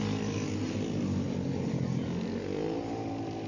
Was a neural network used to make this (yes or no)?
no